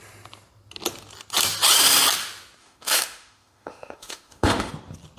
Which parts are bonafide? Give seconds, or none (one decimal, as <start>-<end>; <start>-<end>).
0.0-2.6; 4.7-5.2